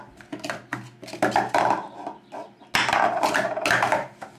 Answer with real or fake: real